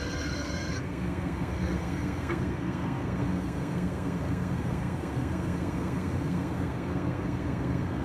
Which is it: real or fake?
fake